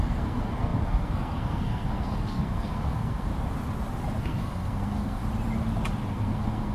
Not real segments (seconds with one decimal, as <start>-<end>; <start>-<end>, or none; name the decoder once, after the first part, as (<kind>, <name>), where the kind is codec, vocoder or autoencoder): 0.0-3.3 (codec, SNAC); 4.2-5.2; 6.1-6.7